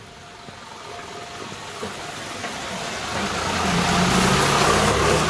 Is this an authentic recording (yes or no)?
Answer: yes